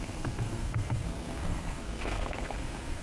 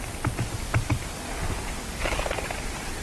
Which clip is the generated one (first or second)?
first